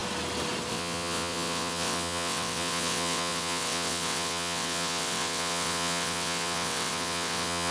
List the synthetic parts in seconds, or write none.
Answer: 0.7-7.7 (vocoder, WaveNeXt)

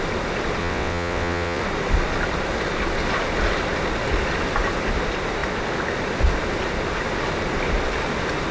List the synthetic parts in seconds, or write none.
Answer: 0.6-1.6 (vocoder, WaveNeXt)

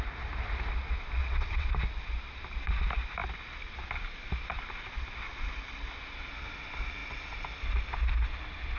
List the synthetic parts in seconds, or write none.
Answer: 1.2-1.7 (vocoder, WaveNeXt)

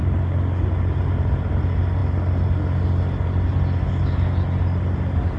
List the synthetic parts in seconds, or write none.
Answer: none